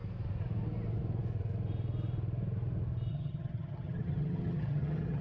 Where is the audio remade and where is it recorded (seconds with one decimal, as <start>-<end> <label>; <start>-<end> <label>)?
0.0-3.1 recorded; 3.1-5.2 remade